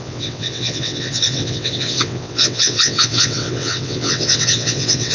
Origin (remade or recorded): remade